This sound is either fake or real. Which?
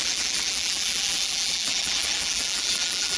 fake